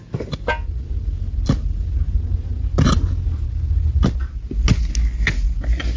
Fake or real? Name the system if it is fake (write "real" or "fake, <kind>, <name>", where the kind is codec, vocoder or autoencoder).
real